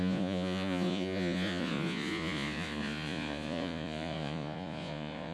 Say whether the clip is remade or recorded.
remade